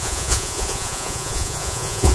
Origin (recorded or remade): remade